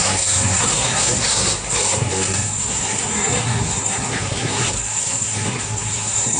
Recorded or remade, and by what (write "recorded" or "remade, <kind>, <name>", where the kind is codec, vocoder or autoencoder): remade, codec, SNAC